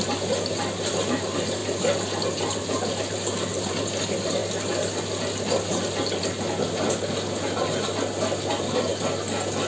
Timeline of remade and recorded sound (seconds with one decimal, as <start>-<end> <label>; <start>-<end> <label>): 0.0-9.7 recorded